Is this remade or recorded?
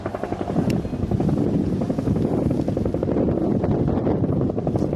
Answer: recorded